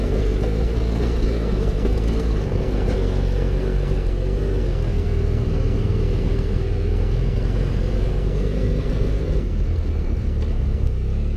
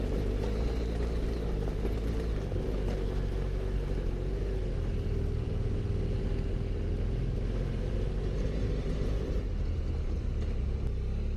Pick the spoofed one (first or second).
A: first